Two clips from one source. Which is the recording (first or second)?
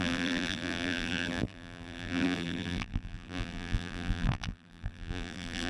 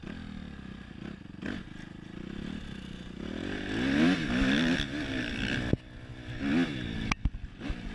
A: second